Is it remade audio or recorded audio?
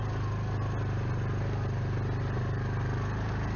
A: recorded